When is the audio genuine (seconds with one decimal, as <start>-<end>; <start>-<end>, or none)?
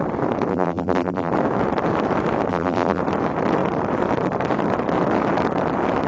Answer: 0.0-0.5; 1.3-2.5; 3.0-6.1